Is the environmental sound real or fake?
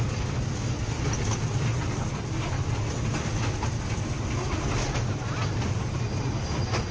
real